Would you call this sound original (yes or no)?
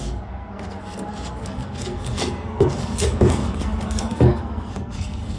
no